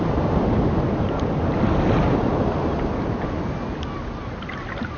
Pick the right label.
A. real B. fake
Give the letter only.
A